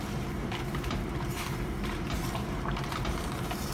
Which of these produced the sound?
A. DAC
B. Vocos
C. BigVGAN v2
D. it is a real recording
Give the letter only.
C